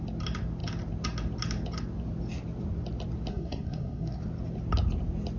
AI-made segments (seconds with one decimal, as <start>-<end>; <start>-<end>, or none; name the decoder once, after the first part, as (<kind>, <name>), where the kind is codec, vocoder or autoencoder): 3.3-4.2 (codec, SNAC)